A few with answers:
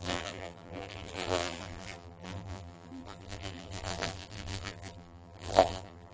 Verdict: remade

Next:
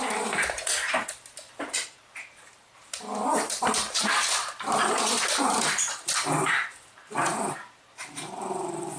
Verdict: remade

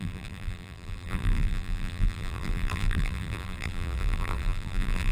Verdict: remade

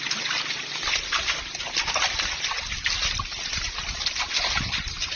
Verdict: recorded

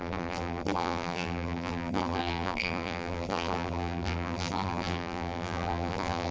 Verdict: remade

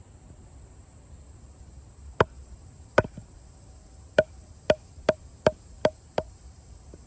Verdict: remade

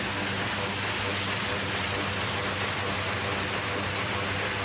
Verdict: recorded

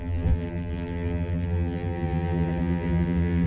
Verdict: remade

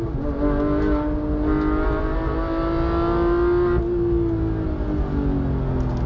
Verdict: recorded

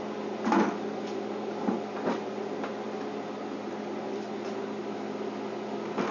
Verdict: recorded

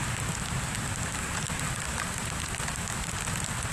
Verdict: recorded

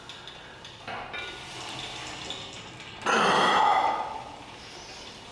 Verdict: recorded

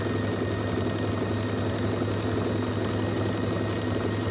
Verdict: recorded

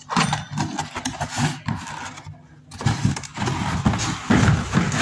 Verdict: recorded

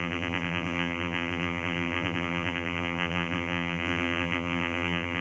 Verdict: remade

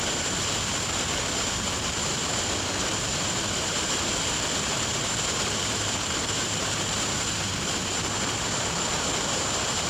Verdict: remade